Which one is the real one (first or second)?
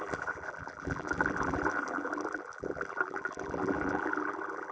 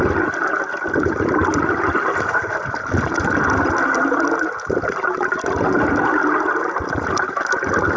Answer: second